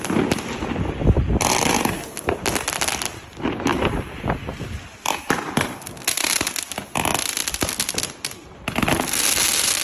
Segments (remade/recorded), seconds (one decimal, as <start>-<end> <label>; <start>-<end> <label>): 0.0-9.8 recorded

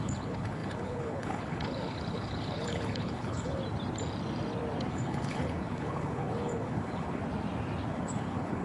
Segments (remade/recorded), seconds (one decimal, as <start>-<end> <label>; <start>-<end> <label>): 0.0-3.6 remade; 3.6-4.9 recorded; 4.9-7.2 remade; 7.2-7.9 recorded; 7.9-8.6 remade

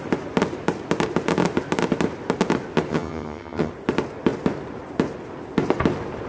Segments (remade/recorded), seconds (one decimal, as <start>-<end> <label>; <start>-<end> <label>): 0.0-2.9 recorded; 2.9-3.7 remade; 3.7-6.3 recorded

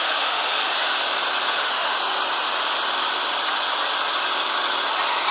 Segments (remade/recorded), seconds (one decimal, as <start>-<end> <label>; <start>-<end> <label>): 0.0-0.7 remade; 0.7-1.6 recorded; 1.6-2.0 remade; 2.0-5.3 recorded

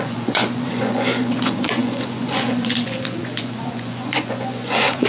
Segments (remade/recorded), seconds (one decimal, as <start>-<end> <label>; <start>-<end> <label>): 0.0-5.1 remade

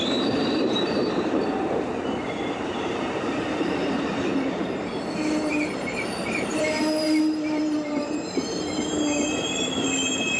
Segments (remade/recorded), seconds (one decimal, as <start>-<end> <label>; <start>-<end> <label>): 0.0-4.9 remade; 4.9-5.5 recorded; 5.5-10.4 remade